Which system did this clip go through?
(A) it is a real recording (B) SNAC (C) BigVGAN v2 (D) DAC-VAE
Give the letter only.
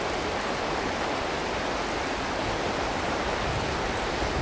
A